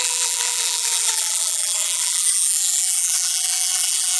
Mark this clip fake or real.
fake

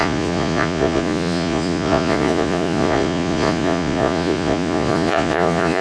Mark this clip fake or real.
fake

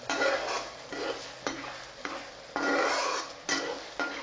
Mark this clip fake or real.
real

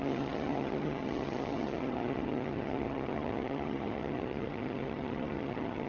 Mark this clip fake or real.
fake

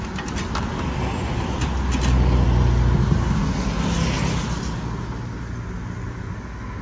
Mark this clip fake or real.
real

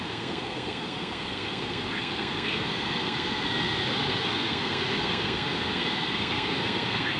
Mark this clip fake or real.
fake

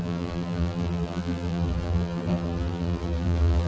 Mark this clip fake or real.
fake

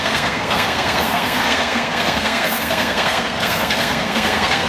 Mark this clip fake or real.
fake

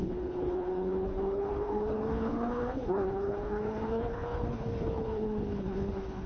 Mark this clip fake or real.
fake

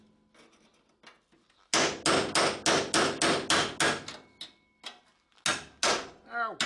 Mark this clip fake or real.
real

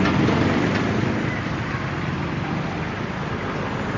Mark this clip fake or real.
real